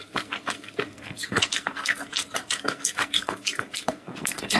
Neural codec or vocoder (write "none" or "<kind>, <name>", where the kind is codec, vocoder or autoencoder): codec, SNAC